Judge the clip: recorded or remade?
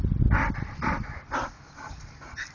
recorded